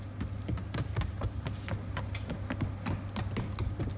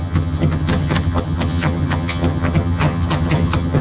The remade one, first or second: second